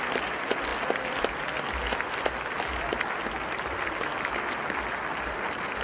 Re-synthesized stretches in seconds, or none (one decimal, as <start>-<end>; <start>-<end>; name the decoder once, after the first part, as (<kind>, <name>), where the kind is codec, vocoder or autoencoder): none